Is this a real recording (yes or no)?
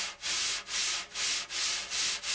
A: yes